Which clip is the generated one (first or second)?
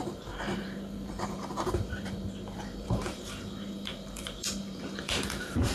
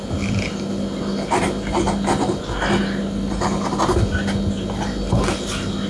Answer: first